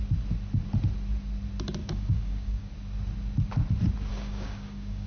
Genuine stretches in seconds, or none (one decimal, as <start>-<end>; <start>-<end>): 0.0-1.8; 2.7-4.1